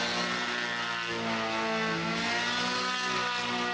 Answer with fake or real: real